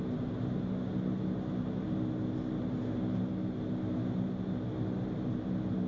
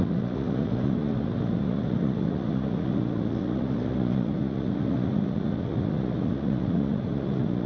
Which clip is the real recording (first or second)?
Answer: first